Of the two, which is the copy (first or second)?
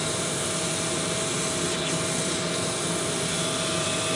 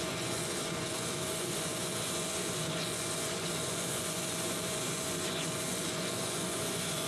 second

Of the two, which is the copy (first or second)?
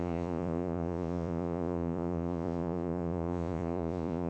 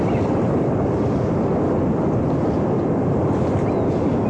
first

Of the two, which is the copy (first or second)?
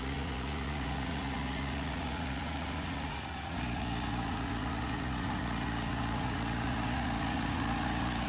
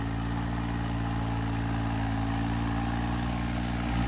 first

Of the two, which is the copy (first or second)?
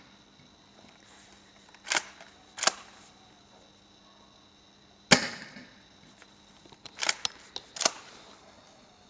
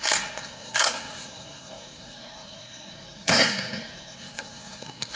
second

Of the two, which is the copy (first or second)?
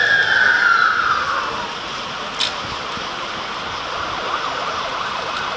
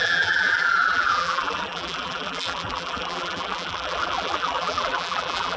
second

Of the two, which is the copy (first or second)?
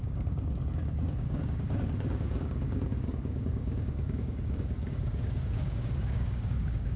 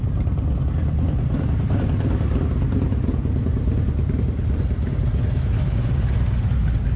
first